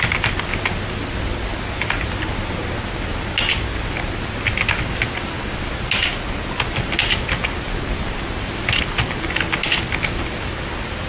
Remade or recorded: recorded